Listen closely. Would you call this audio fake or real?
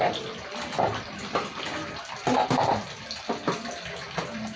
real